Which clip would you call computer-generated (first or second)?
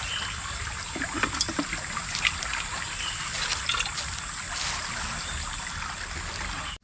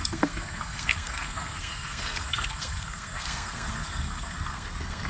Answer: second